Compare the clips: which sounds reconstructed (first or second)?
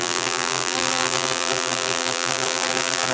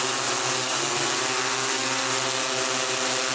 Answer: first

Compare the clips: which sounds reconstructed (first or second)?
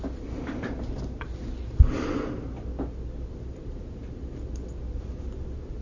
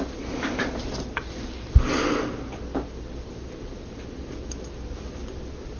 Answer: first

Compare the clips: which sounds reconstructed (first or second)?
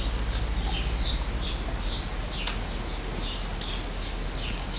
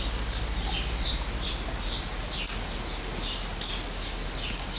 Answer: second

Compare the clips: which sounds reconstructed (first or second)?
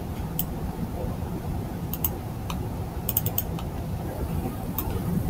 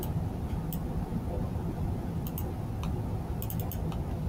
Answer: first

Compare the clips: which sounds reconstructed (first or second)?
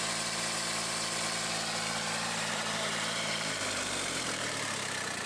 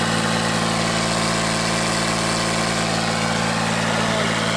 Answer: first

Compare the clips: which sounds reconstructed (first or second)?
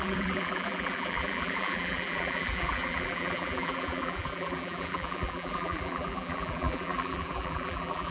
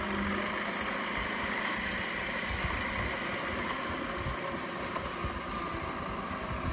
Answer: first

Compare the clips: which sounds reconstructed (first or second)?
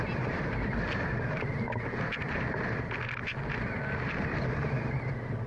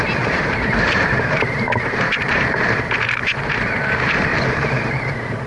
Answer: second